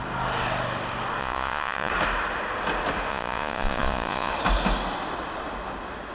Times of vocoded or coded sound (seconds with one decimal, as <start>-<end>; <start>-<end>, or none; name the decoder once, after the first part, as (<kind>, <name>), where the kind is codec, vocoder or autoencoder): 1.2-1.9 (vocoder, Vocos); 3.1-4.3